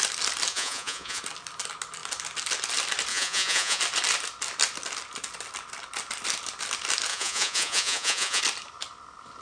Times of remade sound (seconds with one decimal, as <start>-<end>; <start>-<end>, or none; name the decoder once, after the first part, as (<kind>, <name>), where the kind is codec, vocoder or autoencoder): 0.5-1.2 (vocoder, Vocos); 3.1-3.8; 7.1-8.4